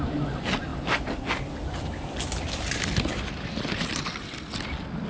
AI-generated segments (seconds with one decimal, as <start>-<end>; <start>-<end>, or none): none